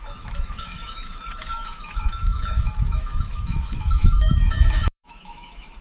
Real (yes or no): no